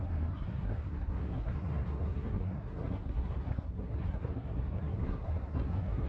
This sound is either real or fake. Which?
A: fake